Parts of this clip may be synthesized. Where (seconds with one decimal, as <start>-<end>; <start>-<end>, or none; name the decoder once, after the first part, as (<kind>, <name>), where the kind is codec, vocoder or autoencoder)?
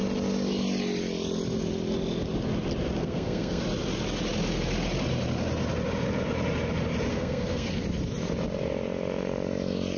3.0-3.6 (codec, SNAC); 7.1-7.8